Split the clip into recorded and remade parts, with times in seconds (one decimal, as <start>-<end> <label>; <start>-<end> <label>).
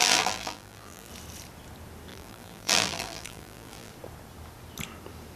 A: 0.0-1.1 remade; 1.1-2.1 recorded; 2.1-3.9 remade; 3.9-5.4 recorded